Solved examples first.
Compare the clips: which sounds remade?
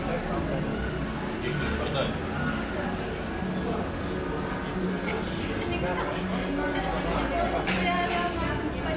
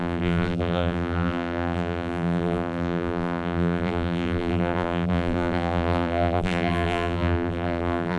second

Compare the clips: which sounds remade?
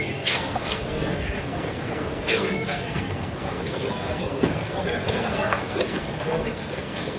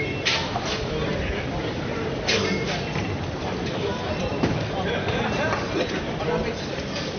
first